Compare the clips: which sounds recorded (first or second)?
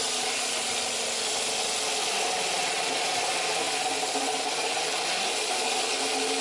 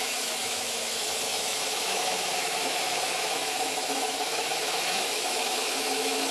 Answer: first